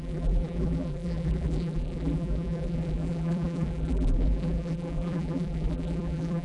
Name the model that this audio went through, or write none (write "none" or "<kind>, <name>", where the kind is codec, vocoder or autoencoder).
vocoder, BigVGAN v2